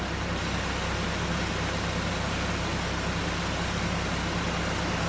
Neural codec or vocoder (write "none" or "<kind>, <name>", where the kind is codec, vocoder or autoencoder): none